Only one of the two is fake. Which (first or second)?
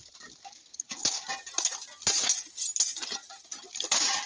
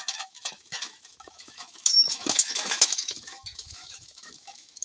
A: second